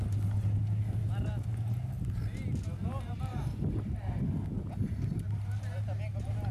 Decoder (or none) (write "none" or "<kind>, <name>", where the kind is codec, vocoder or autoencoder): none